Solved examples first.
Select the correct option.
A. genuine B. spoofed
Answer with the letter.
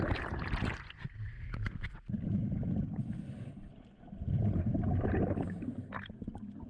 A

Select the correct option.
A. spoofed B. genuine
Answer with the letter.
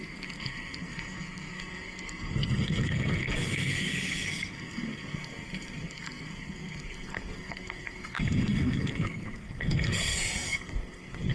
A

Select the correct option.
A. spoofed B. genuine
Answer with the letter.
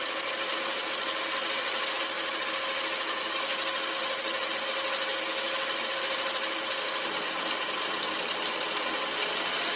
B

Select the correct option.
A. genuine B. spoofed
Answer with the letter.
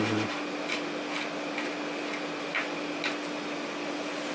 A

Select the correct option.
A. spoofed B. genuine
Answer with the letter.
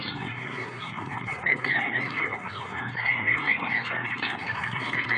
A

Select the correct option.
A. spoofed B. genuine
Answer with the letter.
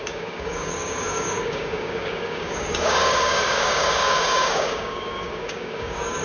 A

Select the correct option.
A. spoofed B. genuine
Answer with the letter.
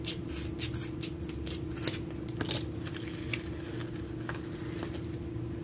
B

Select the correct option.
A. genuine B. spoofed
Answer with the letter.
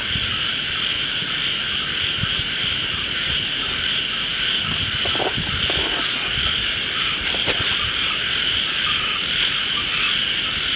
A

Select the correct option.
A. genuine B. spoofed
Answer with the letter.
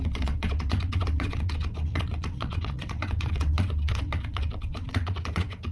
B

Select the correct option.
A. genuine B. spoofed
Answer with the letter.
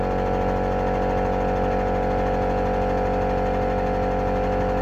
A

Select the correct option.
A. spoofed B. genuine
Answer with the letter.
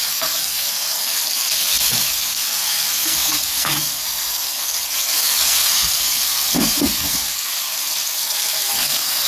A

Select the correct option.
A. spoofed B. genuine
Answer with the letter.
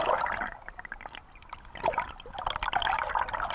B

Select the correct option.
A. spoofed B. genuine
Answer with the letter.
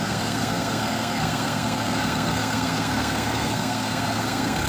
A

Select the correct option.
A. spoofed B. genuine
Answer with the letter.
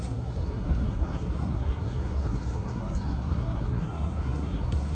A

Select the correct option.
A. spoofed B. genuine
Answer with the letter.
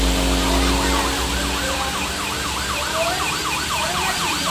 B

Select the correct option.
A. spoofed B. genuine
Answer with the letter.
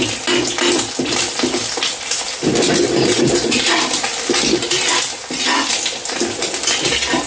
B